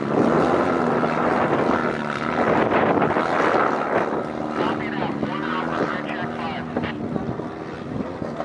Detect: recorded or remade recorded